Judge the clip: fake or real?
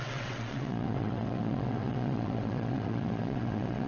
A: fake